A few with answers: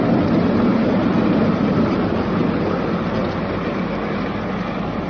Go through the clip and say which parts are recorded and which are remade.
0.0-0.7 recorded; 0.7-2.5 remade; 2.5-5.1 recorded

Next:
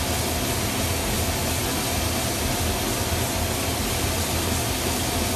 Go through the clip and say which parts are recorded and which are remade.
0.0-5.4 recorded

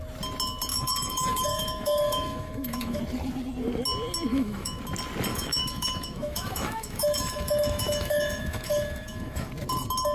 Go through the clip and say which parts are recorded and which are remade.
0.0-0.7 recorded; 0.7-3.0 remade; 3.0-4.3 recorded; 4.3-4.8 remade; 4.8-5.3 recorded; 5.3-9.5 remade; 9.5-10.1 recorded

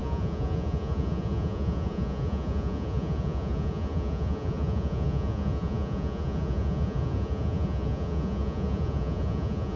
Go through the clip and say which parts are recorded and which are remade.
0.0-9.8 remade

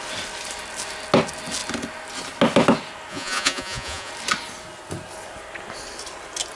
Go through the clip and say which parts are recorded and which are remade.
0.0-3.1 recorded; 3.1-4.1 remade; 4.1-6.5 recorded

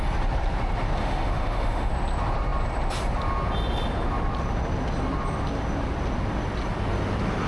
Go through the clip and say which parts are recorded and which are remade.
0.0-1.0 recorded; 1.0-1.9 remade; 1.9-7.5 recorded

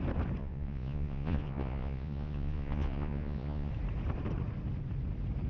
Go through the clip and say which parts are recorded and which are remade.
0.0-0.4 recorded; 0.4-3.7 remade; 3.7-5.5 recorded

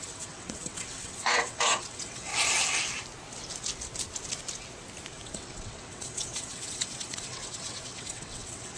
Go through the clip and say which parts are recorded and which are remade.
0.0-2.3 remade; 2.3-5.1 recorded; 5.1-8.8 remade